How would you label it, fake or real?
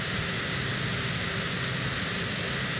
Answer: real